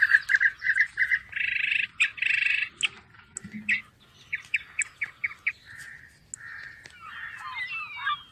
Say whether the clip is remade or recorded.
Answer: recorded